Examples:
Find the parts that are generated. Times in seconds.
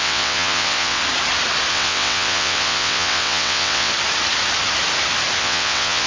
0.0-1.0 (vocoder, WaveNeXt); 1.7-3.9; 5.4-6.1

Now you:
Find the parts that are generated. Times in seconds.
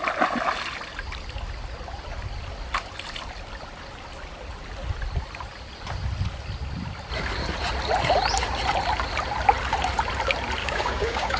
10.6-11.4 (codec, DAC)